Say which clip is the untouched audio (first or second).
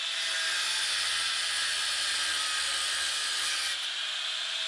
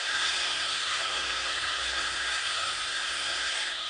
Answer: first